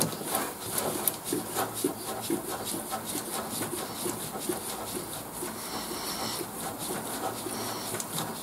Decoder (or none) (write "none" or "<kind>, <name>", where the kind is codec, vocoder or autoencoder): none